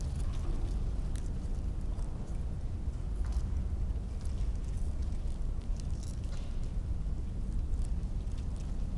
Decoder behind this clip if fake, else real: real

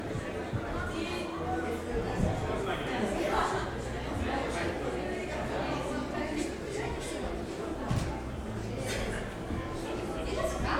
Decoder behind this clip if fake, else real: real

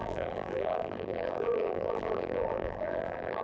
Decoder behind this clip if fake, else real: fake, vocoder, BigVGAN v2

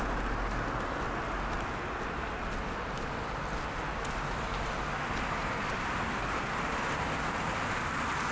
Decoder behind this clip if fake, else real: real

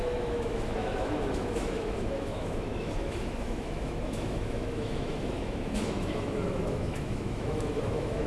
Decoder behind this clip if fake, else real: fake, autoencoder, DAC-VAE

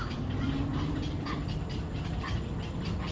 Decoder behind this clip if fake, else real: real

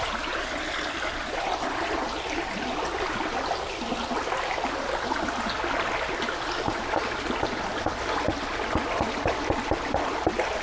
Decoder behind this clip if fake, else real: real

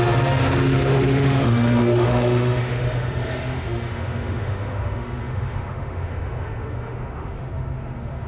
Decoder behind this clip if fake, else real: fake, autoencoder, DAC-VAE